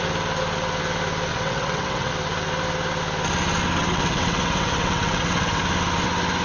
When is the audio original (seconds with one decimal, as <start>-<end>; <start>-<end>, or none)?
0.0-1.3; 2.1-3.8; 5.6-6.4